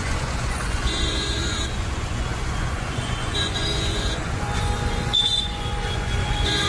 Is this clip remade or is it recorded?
remade